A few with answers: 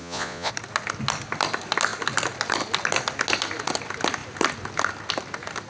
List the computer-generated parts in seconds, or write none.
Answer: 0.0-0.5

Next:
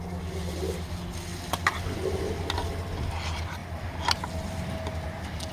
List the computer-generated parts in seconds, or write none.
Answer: 3.6-4.2

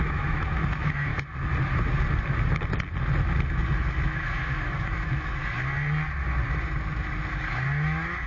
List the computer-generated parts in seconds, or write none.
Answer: 0.0-1.1; 3.5-5.4; 7.3-8.3

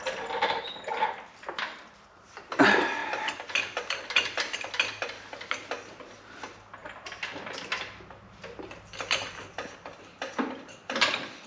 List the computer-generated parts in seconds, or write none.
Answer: none

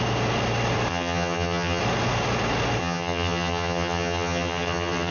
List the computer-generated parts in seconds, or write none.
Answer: 0.9-1.8; 2.8-5.1

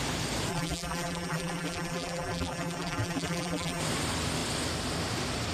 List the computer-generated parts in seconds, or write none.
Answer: 0.5-3.8

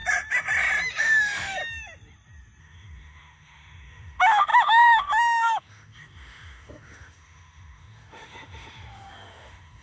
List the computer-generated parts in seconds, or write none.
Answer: 1.0-1.6; 2.6-9.8

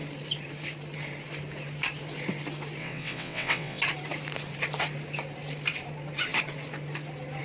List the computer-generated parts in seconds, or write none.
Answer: 2.8-3.8